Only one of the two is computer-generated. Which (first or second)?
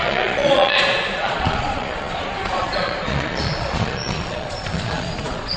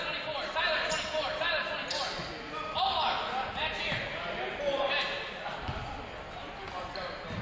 first